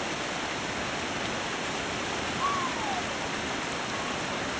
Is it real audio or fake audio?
real